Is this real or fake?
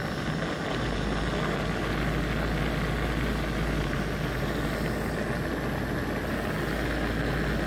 real